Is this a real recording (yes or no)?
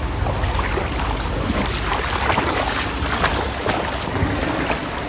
yes